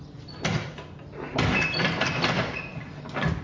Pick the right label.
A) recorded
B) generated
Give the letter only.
A